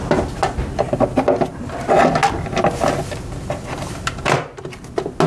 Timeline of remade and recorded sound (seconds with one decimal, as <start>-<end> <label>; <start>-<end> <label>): 0.0-5.3 recorded